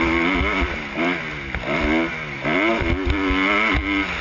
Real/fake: real